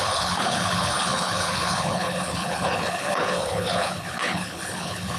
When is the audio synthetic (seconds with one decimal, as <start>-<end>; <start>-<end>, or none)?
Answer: 0.0-5.2